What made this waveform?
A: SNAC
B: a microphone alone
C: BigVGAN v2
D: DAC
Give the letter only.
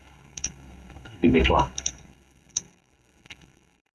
A